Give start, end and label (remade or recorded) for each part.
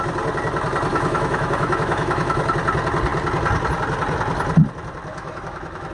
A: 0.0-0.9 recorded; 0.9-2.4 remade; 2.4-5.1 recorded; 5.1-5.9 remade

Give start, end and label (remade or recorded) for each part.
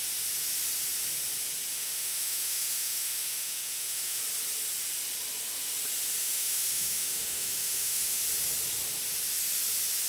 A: 0.0-1.7 recorded; 1.7-4.2 remade; 4.2-6.2 recorded; 6.2-8.2 remade; 8.2-10.1 recorded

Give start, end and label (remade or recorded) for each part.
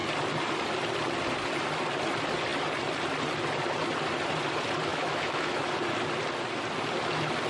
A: 0.0-4.9 recorded; 4.9-5.7 remade; 5.7-7.5 recorded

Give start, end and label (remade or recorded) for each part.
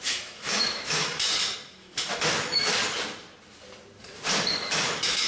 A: 0.0-1.3 remade; 1.3-1.8 recorded; 1.8-2.7 remade; 2.7-4.6 recorded; 4.6-5.3 remade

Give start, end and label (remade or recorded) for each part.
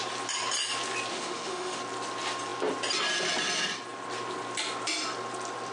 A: 0.0-1.1 recorded; 1.1-1.8 remade; 1.8-5.7 recorded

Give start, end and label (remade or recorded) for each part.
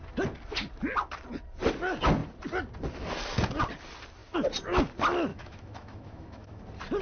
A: 0.0-5.3 recorded; 5.3-6.6 remade; 6.6-7.0 recorded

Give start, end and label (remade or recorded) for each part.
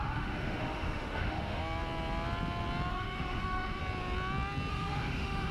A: 0.0-1.6 remade; 1.6-2.9 recorded; 2.9-3.8 remade; 3.8-4.7 recorded; 4.7-5.5 remade